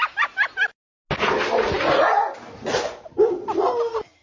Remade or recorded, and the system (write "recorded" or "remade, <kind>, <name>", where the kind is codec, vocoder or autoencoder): recorded